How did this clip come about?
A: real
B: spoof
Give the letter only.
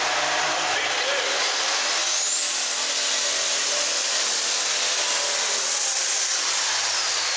A